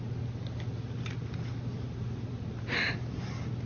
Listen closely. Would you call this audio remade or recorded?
recorded